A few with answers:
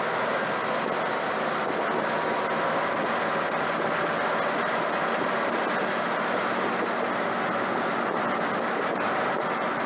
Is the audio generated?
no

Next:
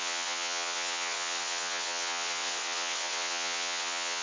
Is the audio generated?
yes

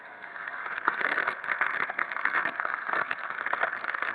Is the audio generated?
yes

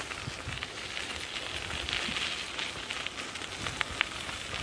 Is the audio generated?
no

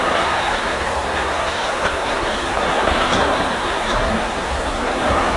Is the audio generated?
yes